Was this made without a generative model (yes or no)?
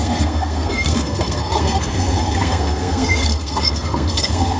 no